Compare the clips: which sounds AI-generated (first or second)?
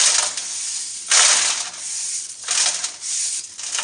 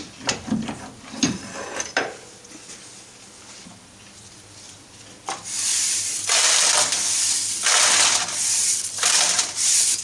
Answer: second